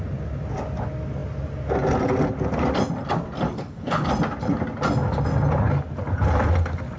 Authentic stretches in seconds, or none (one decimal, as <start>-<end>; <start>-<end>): 0.0-3.5; 4.1-7.0